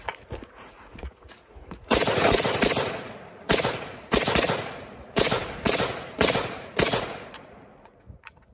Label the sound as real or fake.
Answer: fake